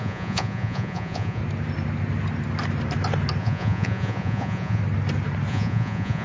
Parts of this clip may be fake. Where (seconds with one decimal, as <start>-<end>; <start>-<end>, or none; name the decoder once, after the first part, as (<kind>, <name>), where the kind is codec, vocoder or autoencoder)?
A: 0.0-1.4 (vocoder, Vocos); 3.4-4.8; 5.5-6.2